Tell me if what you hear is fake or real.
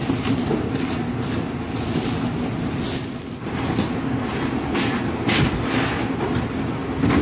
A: real